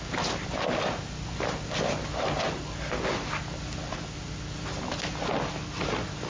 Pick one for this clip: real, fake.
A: real